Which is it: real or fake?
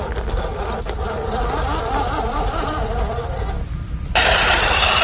real